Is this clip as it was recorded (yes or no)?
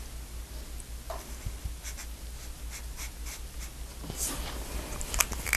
yes